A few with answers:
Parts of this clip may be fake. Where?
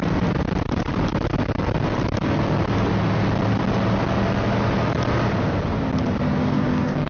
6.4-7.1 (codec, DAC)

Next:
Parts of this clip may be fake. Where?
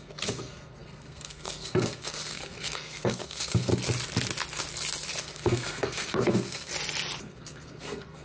0.0-3.7 (codec, SNAC); 5.2-6.7; 7.2-8.2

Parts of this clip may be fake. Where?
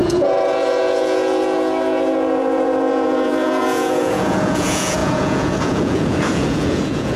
0.0-7.2 (vocoder, Vocos)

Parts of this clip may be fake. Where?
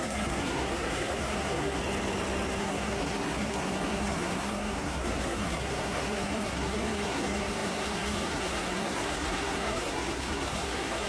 0.0-1.8 (codec, SNAC); 2.6-11.1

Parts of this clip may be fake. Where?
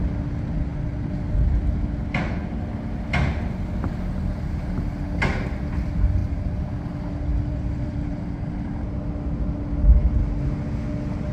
6.2-6.7 (vocoder, BigVGAN v2); 7.3-8.7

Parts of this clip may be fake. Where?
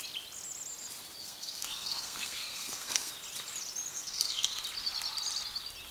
1.2-3.1 (codec, SNAC); 3.9-4.6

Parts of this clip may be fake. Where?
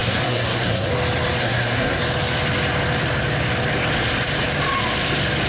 0.0-0.9 (codec, SNAC); 1.4-2.0